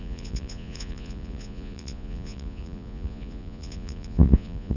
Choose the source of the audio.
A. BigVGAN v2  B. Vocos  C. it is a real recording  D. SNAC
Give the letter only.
B